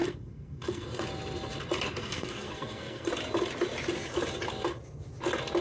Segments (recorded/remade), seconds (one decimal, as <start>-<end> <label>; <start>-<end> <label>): 0.0-1.0 remade; 1.0-2.0 recorded; 2.0-3.1 remade; 3.1-5.6 recorded